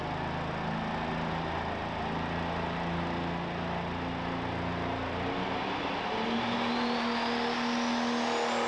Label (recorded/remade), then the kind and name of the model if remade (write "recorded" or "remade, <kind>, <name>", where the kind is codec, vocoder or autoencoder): recorded